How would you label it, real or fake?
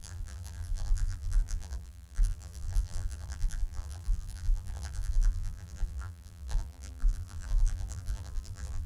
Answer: fake